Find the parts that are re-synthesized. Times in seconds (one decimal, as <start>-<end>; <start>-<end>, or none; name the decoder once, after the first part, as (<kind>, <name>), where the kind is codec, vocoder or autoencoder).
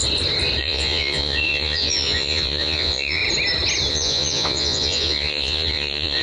0.6-3.2 (vocoder, Vocos); 3.9-6.2